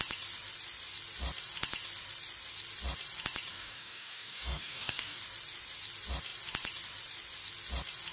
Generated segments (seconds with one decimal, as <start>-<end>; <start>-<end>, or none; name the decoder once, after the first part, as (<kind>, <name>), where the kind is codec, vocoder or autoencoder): 3.5-5.2 (codec, DAC)